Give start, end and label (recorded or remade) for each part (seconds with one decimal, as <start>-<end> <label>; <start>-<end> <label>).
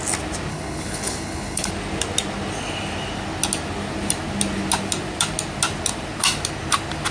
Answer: 0.0-0.5 recorded; 0.5-1.7 remade; 1.7-7.1 recorded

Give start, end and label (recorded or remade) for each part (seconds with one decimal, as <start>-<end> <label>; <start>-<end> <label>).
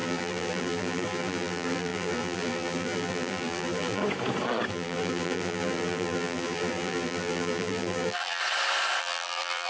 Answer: 0.0-4.0 remade; 4.0-4.7 recorded; 4.7-8.4 remade; 8.4-9.0 recorded; 9.0-9.7 remade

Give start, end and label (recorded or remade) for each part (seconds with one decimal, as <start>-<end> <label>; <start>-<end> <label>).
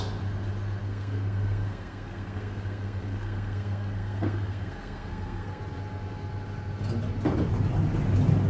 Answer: 0.0-0.8 recorded; 0.8-5.6 remade; 5.6-8.5 recorded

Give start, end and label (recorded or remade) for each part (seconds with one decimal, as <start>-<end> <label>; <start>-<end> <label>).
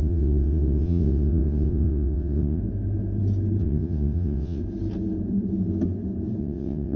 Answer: 0.0-2.6 remade; 2.6-3.6 recorded; 3.6-4.6 remade; 4.6-6.4 recorded; 6.4-7.0 remade